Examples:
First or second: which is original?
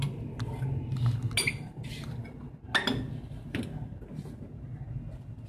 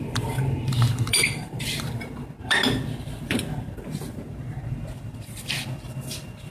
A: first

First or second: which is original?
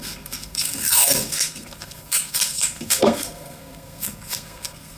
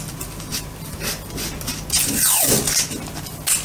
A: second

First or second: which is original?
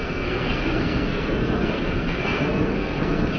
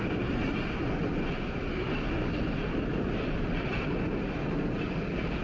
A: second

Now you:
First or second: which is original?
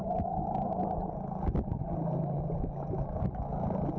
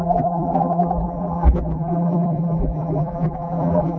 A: first